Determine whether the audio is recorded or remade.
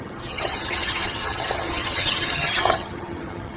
remade